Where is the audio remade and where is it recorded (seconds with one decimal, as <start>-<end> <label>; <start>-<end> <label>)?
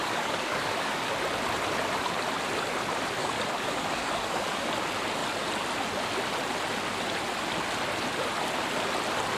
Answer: 0.0-1.1 remade; 1.1-3.2 recorded; 3.2-4.7 remade; 4.7-9.4 recorded